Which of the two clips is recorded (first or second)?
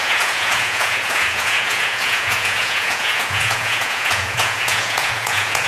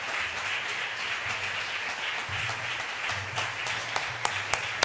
second